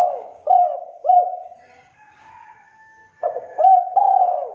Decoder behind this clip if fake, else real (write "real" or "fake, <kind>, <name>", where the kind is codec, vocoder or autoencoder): fake, codec, DAC